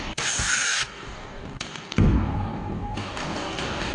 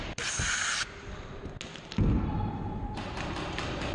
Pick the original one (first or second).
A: second